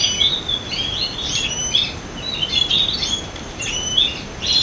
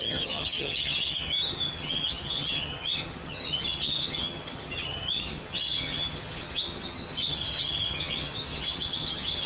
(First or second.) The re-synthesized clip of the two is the second